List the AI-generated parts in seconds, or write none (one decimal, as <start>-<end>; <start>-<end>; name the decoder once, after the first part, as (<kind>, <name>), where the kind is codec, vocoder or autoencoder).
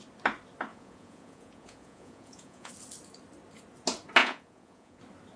0.7-2.7 (vocoder, Vocos); 4.2-5.0